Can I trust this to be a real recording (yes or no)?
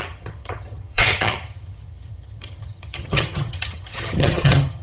no